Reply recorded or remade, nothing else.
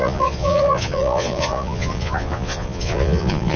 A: remade